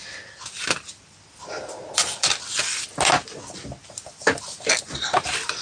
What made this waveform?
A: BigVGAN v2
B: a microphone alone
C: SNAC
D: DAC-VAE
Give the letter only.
B